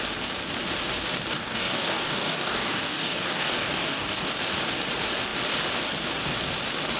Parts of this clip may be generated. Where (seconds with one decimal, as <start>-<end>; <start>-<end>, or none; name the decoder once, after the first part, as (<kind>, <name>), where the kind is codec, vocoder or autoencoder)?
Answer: 1.3-4.3 (codec, DAC)